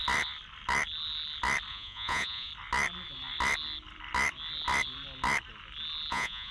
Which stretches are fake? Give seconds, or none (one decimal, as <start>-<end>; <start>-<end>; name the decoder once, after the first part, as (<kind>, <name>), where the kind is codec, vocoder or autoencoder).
1.7-2.5 (vocoder, Vocos); 6.1-6.5

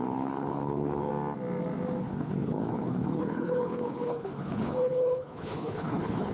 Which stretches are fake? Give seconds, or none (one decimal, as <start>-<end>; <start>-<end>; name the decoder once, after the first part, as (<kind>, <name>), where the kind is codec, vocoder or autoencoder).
0.0-1.1 (codec, HILCodec); 2.0-6.3

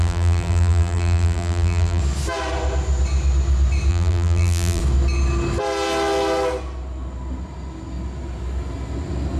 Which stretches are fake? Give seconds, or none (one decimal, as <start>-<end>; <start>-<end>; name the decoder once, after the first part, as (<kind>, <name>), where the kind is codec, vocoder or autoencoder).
0.0-2.0 (vocoder, BigVGAN v2); 3.9-4.8

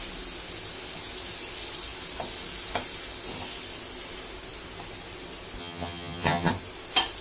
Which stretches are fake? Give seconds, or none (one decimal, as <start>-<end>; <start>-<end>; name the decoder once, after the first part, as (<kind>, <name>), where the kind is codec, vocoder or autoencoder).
5.6-6.5 (vocoder, HiFi-GAN)

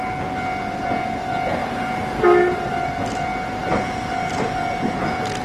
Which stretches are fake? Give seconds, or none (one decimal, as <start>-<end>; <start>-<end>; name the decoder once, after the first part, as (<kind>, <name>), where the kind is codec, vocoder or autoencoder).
1.6-2.9 (vocoder, BigVGAN v2); 3.6-4.3